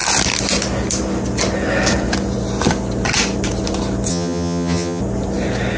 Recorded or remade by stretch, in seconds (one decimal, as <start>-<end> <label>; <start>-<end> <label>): 0.0-4.1 recorded; 4.1-5.0 remade; 5.0-5.8 recorded